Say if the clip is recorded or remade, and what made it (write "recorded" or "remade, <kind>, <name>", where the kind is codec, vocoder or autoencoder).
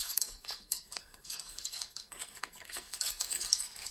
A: remade, codec, SNAC